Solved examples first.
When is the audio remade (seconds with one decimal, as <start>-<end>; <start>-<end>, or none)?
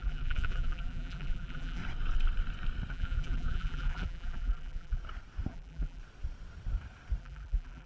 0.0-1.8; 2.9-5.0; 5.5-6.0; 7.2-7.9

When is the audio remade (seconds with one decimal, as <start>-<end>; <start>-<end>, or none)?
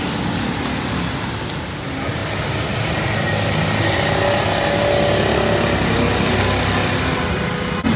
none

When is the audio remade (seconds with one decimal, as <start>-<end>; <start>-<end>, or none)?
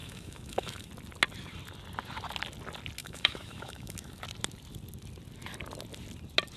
0.0-0.9; 3.0-4.2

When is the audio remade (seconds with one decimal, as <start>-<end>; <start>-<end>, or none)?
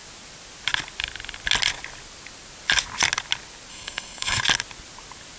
3.7-4.4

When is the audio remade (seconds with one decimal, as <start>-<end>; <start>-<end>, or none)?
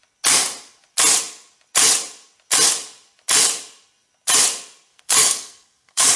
4.9-6.2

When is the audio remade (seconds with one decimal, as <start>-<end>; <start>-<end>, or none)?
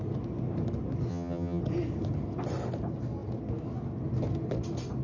1.1-1.6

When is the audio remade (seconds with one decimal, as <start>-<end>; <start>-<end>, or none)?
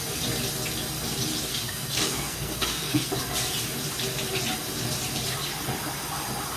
1.5-3.1